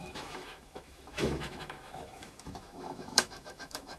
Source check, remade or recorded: remade